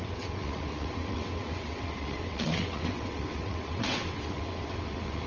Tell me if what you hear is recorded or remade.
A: remade